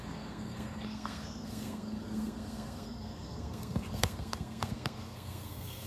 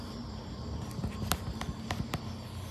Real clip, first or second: second